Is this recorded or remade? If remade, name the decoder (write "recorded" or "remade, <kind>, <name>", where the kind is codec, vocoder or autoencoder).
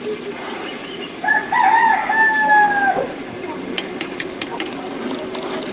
recorded